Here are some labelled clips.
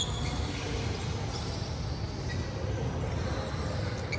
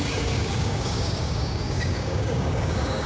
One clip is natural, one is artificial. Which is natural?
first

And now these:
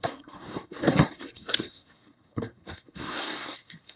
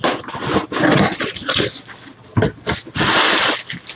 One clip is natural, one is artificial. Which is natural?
second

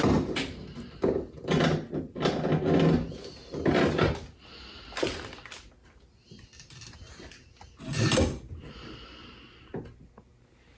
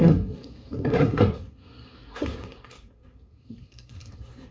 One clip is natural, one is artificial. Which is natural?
first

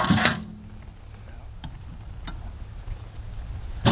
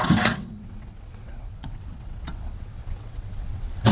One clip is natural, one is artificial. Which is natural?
first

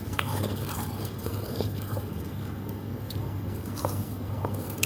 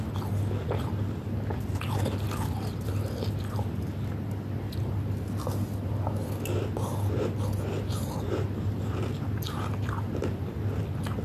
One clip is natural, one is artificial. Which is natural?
second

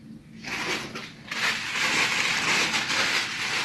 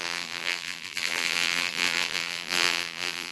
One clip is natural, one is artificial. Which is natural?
first